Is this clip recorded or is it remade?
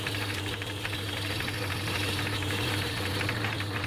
remade